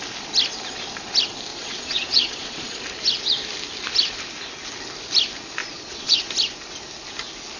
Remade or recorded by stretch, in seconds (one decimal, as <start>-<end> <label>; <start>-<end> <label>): 0.0-1.5 recorded; 1.5-2.8 remade; 2.8-5.6 recorded; 5.6-6.3 remade; 6.3-7.6 recorded